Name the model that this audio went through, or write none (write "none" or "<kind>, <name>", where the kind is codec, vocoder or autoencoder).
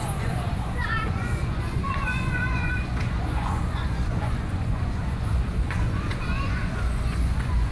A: vocoder, Vocos